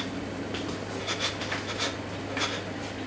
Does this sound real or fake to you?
real